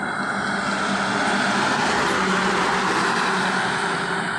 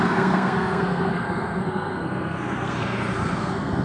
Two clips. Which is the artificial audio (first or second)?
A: second